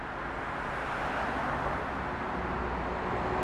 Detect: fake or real real